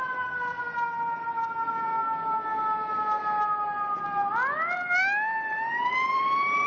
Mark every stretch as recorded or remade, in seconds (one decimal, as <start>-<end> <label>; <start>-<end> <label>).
0.0-1.9 remade; 1.9-5.9 recorded; 5.9-6.7 remade

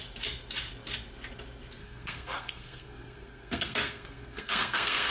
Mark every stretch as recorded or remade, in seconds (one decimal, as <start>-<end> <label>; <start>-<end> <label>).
0.0-1.8 recorded; 1.8-5.1 remade

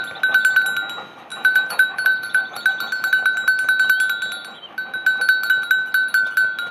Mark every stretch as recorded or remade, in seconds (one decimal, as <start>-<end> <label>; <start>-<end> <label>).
0.0-1.3 recorded; 1.3-2.6 remade; 2.6-6.7 recorded

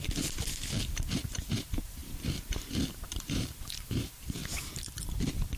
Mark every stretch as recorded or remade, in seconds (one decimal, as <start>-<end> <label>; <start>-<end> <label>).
0.0-4.4 remade; 4.4-5.6 recorded

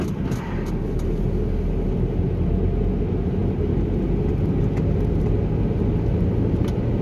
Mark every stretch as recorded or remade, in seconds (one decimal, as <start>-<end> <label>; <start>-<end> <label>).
0.0-7.0 recorded

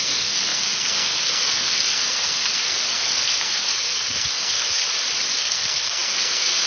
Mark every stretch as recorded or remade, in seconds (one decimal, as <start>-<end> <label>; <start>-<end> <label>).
0.0-4.8 remade; 4.8-5.4 recorded; 5.4-6.7 remade

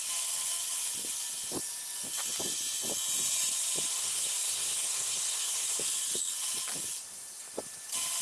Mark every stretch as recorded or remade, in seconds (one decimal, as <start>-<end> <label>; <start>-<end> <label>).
0.0-3.9 recorded; 3.9-5.8 remade; 5.8-8.2 recorded

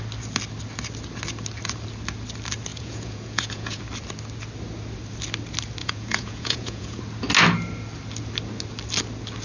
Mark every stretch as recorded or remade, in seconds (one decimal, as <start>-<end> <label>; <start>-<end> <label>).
0.0-2.7 recorded; 2.7-3.8 remade; 3.8-5.8 recorded; 5.8-7.0 remade; 7.0-9.4 recorded